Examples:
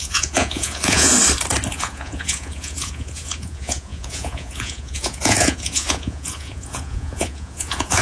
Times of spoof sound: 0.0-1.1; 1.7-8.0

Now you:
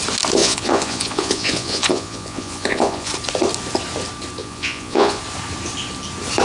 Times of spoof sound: 0.4-3.1; 4.4-5.2